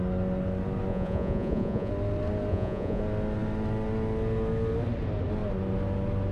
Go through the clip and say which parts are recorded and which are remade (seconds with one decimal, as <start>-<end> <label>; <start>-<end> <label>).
0.0-0.9 recorded; 0.9-1.9 remade; 1.9-2.5 recorded; 2.5-3.0 remade; 3.0-6.3 recorded